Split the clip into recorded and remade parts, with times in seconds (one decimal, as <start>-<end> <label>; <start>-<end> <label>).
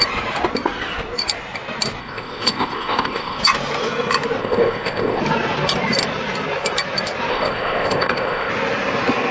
0.0-2.0 recorded; 2.0-3.4 remade; 3.4-4.4 recorded; 4.4-5.2 remade; 5.2-7.3 recorded; 7.3-8.5 remade; 8.5-9.3 recorded